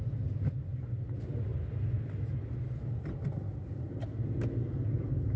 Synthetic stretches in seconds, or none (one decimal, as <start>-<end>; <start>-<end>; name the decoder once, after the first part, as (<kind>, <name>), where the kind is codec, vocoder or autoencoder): none